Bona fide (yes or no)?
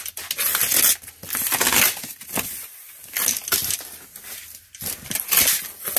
yes